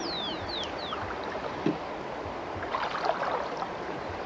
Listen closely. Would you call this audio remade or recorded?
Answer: remade